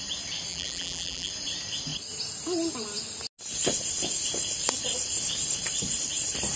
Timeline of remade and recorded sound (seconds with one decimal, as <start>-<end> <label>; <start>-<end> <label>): 0.0-0.5 recorded; 0.5-1.3 remade; 1.3-6.6 recorded